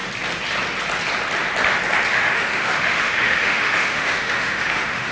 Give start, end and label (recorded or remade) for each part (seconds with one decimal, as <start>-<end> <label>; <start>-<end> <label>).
0.0-2.1 recorded; 2.1-5.1 remade